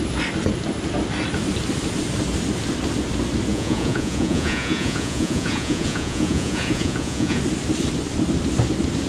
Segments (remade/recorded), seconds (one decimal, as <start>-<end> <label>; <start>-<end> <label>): 0.0-3.5 recorded; 3.5-7.4 remade; 7.4-9.1 recorded